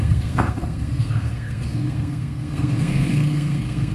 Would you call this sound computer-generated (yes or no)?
yes